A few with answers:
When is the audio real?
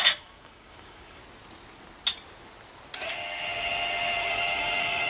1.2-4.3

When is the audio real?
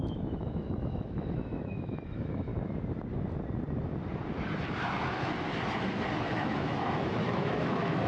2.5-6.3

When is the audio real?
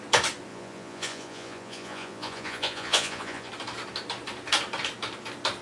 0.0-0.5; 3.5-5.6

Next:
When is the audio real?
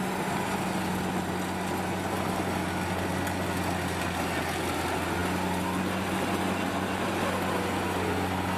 0.0-8.6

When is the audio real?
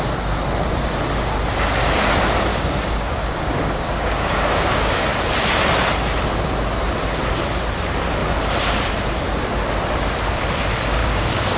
0.0-2.5; 5.0-11.0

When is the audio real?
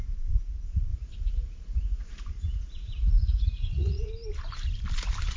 0.0-0.9; 4.1-5.4